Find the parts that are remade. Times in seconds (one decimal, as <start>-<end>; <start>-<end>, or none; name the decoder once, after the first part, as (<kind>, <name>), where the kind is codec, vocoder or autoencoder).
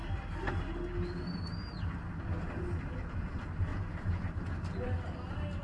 0.0-0.6 (vocoder, BigVGAN v2); 3.7-4.4